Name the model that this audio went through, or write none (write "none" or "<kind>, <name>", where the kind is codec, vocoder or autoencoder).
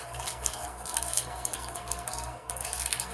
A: codec, SNAC